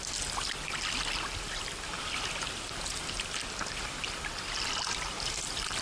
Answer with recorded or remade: recorded